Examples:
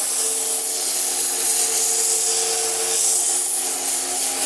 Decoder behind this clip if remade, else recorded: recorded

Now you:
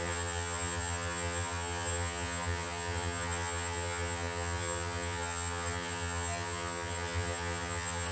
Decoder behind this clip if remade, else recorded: remade, vocoder, HiFi-GAN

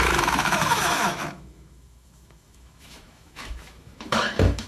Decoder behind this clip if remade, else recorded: remade, autoencoder, DAC-VAE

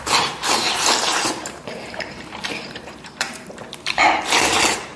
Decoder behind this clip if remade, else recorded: remade, vocoder, BigVGAN v2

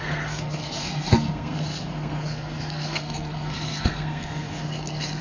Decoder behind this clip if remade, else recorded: remade, codec, SNAC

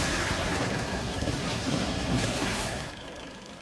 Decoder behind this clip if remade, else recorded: remade, codec, SNAC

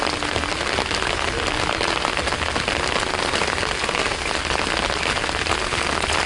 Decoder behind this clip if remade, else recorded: recorded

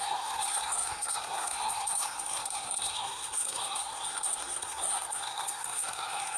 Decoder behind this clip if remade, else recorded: remade, codec, SNAC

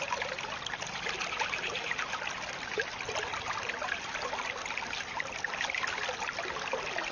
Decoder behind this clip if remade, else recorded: recorded